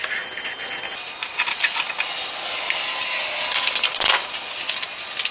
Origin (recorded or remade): recorded